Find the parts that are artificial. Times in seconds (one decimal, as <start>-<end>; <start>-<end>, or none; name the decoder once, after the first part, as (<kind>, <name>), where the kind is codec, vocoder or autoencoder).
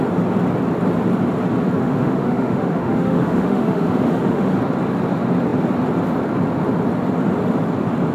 1.8-4.5 (autoencoder, DAC-VAE)